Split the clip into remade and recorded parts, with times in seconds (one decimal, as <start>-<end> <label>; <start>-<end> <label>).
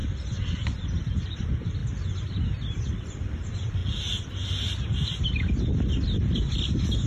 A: 0.0-1.8 remade; 1.8-3.4 recorded; 3.4-3.8 remade; 3.8-7.1 recorded